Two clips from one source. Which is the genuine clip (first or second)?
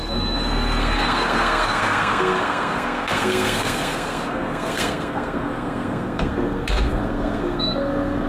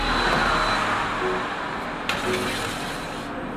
second